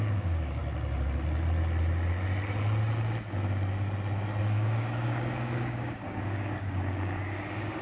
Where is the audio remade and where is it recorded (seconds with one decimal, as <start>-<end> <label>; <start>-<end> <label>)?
0.0-0.6 remade; 0.6-4.4 recorded; 4.4-7.8 remade